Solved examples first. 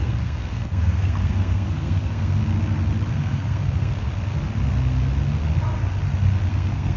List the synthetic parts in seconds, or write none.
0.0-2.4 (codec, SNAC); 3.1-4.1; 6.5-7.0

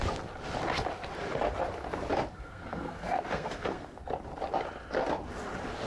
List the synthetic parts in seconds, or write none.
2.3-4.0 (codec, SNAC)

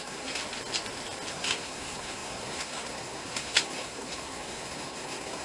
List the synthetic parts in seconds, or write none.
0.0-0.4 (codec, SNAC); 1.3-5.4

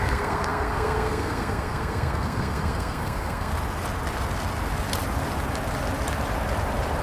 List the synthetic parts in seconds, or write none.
0.0-3.5 (codec, SNAC)